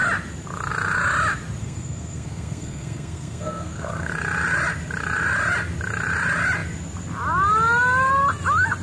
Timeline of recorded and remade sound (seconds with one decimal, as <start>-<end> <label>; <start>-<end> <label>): 0.0-1.6 recorded; 1.6-4.1 remade; 4.1-8.8 recorded